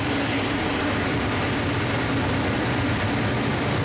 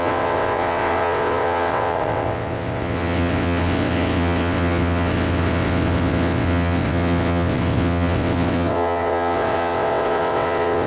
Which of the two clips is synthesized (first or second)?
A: second